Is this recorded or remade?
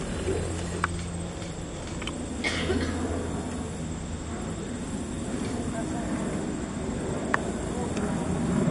recorded